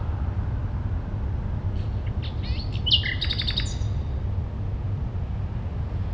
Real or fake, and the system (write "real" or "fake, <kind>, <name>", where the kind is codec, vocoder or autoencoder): real